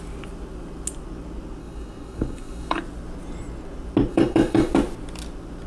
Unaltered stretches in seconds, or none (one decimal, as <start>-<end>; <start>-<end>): 0.0-1.6; 2.8-4.1; 4.7-5.7